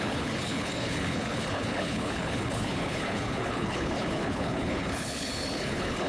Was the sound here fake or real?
fake